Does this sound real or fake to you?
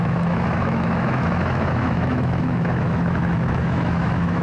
fake